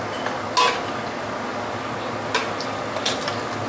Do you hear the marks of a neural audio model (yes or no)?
no